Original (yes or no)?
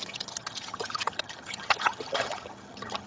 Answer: no